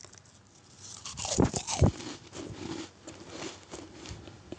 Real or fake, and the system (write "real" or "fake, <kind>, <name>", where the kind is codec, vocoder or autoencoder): real